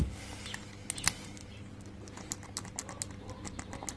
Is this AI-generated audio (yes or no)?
no